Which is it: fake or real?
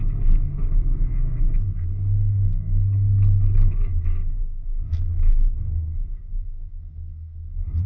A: fake